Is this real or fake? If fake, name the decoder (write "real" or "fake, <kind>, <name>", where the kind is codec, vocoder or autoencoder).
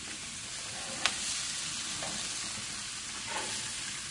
real